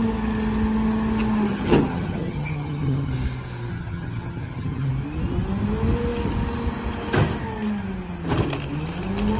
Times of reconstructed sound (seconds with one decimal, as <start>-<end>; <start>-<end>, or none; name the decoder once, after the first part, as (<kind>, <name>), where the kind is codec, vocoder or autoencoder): 1.5-3.1 (vocoder, HiFi-GAN); 3.7-4.9